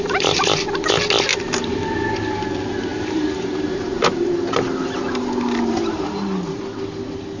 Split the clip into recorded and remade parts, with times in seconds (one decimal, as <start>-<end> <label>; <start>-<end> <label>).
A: 0.0-1.3 recorded; 1.3-1.8 remade; 1.8-2.9 recorded; 2.9-4.3 remade; 4.3-5.9 recorded; 5.9-6.6 remade; 6.6-7.4 recorded